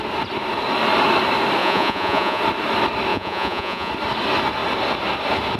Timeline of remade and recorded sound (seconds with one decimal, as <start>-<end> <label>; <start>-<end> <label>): 0.0-1.6 recorded; 1.6-2.4 remade; 2.4-3.1 recorded; 3.1-3.9 remade; 3.9-5.6 recorded